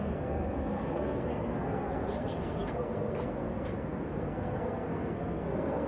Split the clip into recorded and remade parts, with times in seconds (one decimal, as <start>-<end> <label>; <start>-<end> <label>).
0.0-5.9 remade